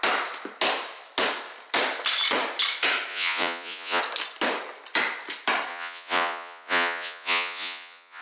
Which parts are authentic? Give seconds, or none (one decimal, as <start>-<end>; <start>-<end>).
0.0-3.1; 4.0-5.7

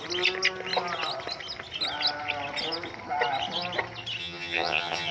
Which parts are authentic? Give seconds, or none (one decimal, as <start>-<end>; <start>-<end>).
0.0-4.2